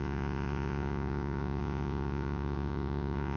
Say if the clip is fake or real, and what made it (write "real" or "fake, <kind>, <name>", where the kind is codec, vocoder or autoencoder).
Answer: fake, vocoder, Vocos